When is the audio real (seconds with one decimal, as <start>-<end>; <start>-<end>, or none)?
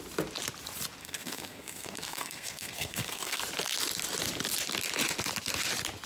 0.0-1.0; 3.4-6.1